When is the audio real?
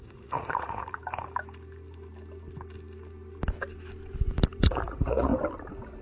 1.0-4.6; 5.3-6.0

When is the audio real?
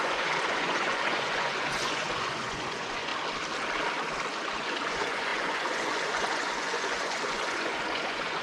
3.1-4.3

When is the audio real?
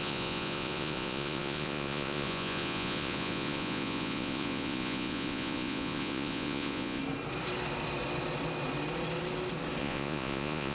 7.0-9.8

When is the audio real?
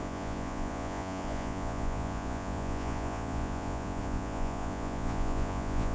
none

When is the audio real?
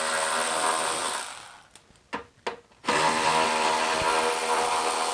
0.0-5.1